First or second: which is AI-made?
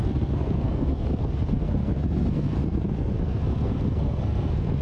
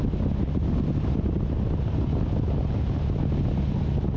first